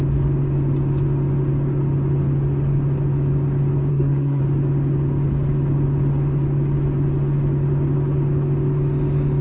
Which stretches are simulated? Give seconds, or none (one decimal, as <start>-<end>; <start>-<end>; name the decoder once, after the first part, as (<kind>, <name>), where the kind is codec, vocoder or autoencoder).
3.9-4.4 (codec, SNAC)